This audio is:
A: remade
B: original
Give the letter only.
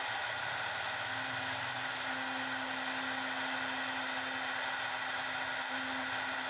B